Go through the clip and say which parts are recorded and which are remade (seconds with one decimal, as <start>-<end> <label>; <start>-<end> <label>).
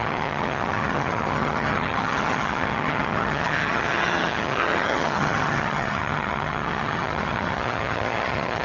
0.0-8.6 remade